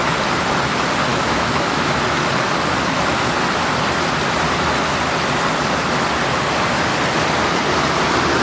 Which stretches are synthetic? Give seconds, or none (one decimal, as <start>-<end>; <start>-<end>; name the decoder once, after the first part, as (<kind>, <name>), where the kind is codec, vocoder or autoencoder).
1.1-1.9 (autoencoder, DAC-VAE)